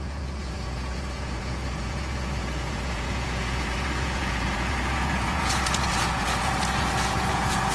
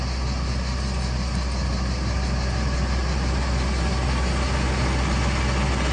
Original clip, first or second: second